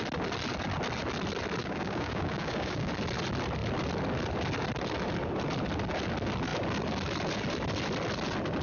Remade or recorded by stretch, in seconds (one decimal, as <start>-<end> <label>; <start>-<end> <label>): 0.0-1.6 recorded; 1.6-2.9 remade; 2.9-8.6 recorded